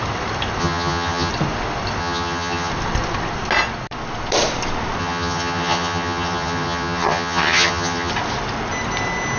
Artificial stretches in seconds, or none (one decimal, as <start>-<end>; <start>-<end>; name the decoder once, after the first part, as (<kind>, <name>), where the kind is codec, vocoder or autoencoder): 0.6-1.3 (vocoder, HiFi-GAN); 2.0-2.7; 5.0-8.1